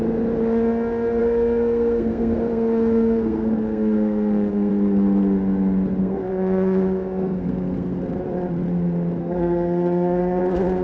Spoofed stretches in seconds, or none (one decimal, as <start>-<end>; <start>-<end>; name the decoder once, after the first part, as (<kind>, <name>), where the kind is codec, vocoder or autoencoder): 1.2-4.7 (codec, SNAC); 6.0-8.0; 9.2-10.4